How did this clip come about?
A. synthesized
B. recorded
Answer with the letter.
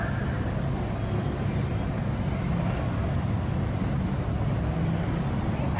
B